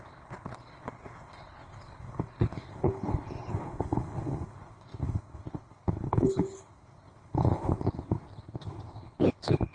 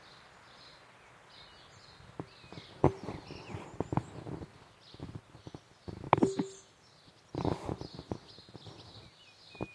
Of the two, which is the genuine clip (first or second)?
second